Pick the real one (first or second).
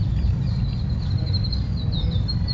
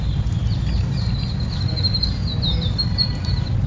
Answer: second